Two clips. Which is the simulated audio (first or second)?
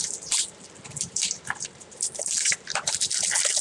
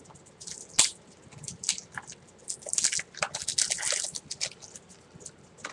first